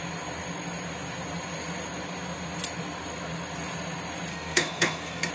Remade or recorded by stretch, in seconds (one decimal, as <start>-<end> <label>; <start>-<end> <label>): 0.0-4.3 recorded; 4.3-5.3 remade